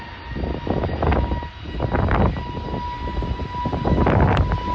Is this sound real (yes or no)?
yes